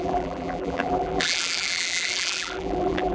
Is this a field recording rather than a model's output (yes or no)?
no